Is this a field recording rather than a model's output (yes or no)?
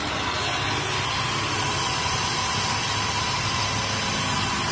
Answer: yes